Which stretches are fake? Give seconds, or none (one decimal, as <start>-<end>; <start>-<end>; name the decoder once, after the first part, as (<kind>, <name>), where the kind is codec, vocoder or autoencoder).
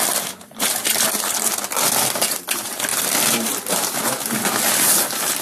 none